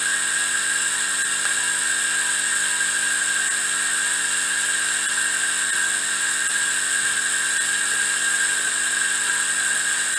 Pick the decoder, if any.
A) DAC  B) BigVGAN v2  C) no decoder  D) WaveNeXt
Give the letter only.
C